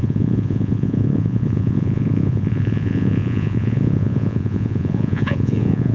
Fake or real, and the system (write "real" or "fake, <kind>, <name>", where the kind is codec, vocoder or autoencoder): fake, vocoder, Vocos